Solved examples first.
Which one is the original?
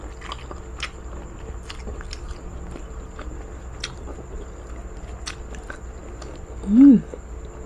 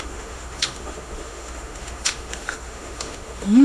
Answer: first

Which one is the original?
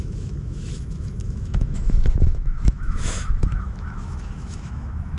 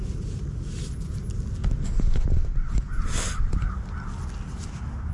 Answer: second